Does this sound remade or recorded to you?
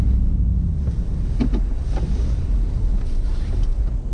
recorded